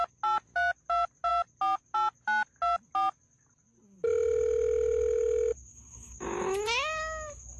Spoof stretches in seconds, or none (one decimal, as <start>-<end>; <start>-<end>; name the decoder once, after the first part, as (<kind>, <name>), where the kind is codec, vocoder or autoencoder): none